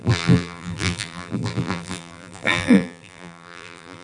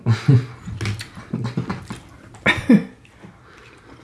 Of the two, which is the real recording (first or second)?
second